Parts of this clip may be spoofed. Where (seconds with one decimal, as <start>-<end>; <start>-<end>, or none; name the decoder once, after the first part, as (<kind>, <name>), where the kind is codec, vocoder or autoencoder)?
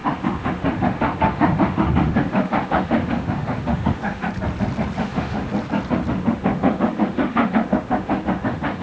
0.0-4.3 (autoencoder, DAC-VAE); 5.0-5.5; 6.1-8.8